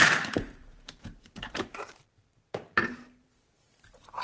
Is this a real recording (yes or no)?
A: no